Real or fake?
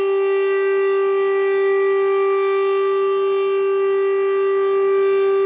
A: real